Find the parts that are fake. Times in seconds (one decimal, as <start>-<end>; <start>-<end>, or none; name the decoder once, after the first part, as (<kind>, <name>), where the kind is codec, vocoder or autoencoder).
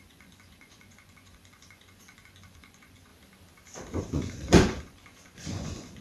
0.0-3.1 (vocoder, Vocos); 4.0-6.0